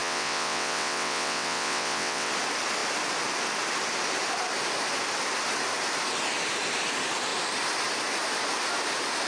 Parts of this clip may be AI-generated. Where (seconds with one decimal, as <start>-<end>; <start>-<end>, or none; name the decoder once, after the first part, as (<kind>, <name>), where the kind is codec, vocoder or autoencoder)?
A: 0.0-2.3 (vocoder, WaveNeXt)